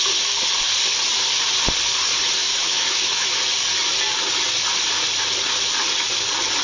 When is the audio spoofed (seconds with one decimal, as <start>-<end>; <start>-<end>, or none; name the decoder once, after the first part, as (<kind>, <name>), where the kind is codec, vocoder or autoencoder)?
2.5-3.4 (autoencoder, DAC-VAE)